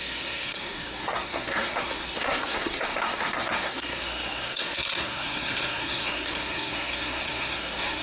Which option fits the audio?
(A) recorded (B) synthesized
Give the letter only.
B